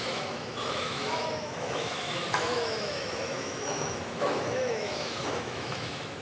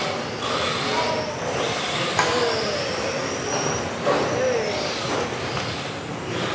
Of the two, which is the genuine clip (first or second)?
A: second